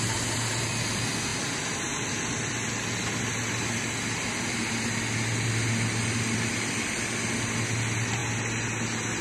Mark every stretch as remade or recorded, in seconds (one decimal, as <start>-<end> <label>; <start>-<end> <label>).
0.0-9.2 recorded